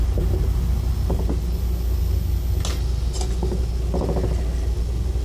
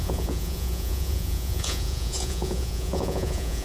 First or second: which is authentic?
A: first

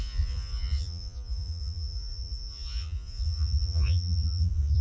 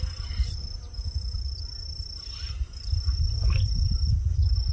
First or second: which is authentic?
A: second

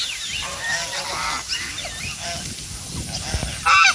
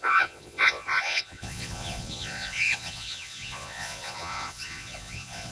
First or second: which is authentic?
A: first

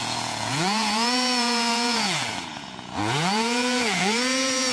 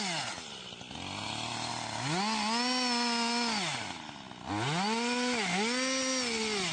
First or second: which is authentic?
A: second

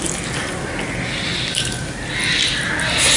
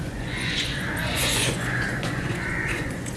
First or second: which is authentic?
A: first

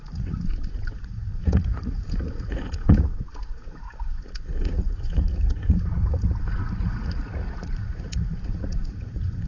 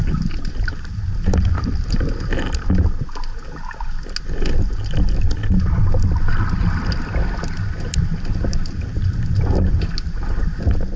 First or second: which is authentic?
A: second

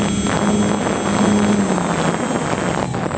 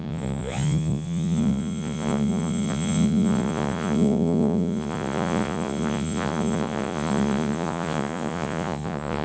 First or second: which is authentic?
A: first